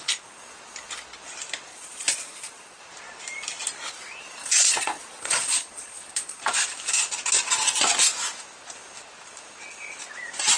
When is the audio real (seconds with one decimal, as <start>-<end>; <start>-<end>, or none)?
0.0-1.7; 2.8-4.4; 6.4-10.6